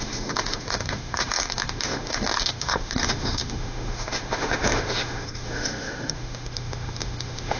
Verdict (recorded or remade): remade